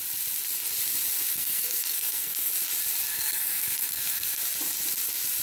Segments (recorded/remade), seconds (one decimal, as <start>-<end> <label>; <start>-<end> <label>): 0.0-1.3 recorded; 1.3-2.5 remade; 2.5-3.1 recorded; 3.1-4.4 remade; 4.4-5.4 recorded